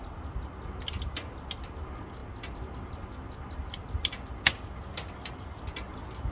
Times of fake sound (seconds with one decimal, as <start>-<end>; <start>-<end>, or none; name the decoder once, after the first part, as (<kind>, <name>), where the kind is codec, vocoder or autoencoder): none